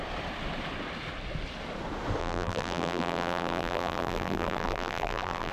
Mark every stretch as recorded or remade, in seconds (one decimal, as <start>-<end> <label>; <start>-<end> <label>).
0.0-2.2 recorded; 2.2-5.5 remade